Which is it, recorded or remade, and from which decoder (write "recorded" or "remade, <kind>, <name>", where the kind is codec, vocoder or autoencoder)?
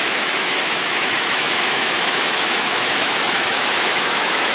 remade, autoencoder, DAC-VAE